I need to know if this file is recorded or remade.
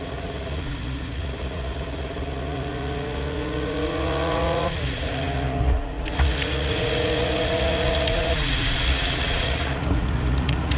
remade